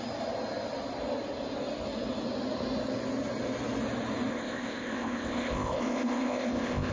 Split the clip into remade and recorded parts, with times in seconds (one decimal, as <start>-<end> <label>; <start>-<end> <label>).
0.0-4.3 recorded; 4.3-6.9 remade